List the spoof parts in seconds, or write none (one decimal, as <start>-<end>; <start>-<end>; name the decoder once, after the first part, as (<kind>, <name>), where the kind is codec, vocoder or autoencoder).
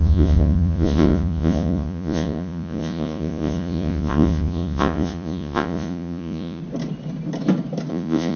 0.0-6.6 (vocoder, Vocos); 7.9-8.4